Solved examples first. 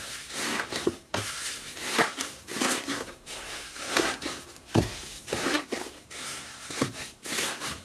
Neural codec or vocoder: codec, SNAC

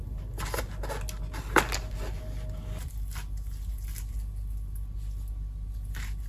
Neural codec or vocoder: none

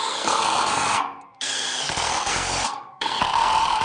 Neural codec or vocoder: codec, SNAC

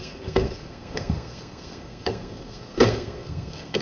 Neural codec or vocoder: codec, SNAC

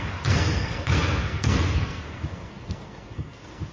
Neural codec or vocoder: codec, SNAC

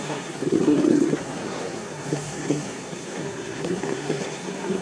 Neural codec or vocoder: codec, SNAC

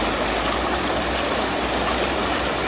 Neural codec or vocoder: none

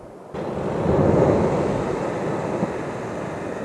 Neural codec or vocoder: none